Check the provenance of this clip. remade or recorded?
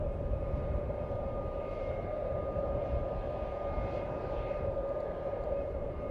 remade